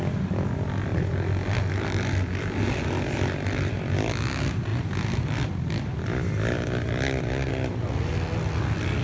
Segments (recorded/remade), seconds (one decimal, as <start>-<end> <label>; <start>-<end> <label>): 0.0-9.0 recorded